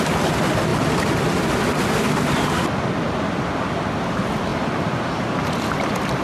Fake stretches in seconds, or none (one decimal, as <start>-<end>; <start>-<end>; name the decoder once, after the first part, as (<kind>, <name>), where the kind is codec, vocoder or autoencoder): none